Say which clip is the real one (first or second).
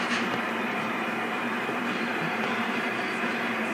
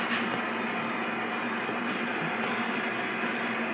second